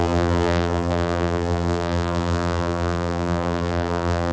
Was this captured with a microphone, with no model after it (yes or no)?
no